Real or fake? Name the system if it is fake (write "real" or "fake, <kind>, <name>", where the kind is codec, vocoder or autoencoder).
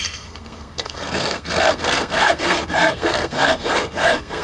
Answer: fake, codec, SNAC